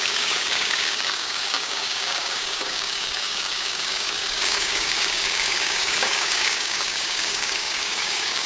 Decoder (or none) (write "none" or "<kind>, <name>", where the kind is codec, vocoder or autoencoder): codec, DAC